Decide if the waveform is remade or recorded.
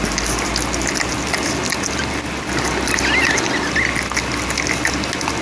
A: recorded